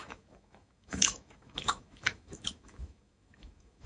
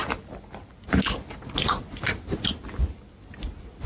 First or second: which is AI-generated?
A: first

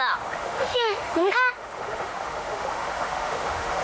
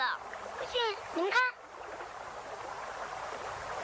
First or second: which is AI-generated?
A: first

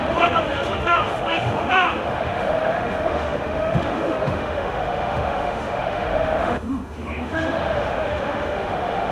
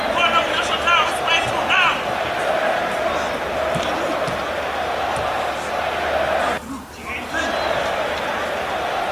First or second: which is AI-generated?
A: first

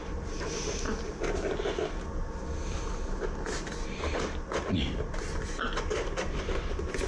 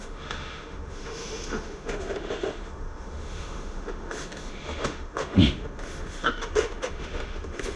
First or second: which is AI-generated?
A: second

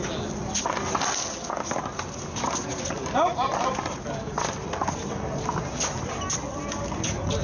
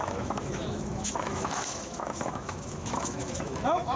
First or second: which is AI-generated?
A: second